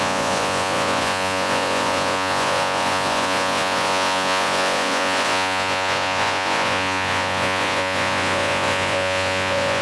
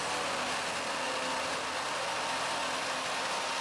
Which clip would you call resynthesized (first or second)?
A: first